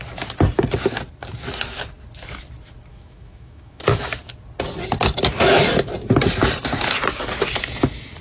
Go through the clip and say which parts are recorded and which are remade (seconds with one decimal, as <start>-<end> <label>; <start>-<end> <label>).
0.0-2.9 recorded; 2.9-4.3 remade; 4.3-8.2 recorded